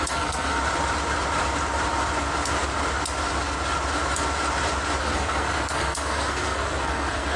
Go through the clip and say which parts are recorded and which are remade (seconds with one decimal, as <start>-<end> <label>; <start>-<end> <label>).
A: 0.0-0.6 remade; 0.6-5.0 recorded; 5.0-7.4 remade